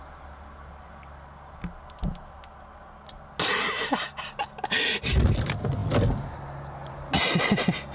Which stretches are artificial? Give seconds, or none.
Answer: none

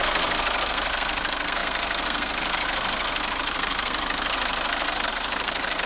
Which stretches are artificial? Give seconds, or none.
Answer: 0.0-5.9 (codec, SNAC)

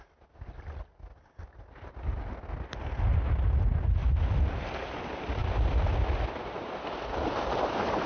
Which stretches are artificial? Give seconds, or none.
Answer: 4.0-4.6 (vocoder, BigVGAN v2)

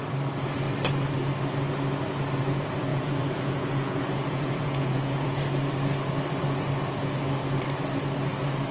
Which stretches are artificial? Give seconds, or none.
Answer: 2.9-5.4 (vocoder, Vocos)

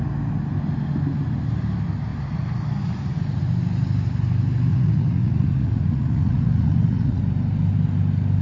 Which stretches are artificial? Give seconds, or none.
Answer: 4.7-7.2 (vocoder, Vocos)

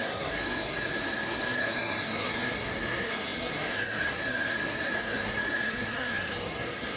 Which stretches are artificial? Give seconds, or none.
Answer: 0.0-7.0 (codec, SNAC)